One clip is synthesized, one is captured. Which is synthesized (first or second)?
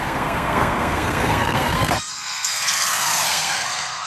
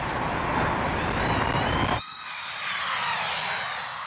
first